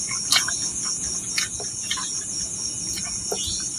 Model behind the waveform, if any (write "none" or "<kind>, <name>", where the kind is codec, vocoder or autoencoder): vocoder, Vocos